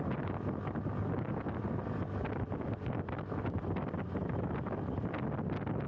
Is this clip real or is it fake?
real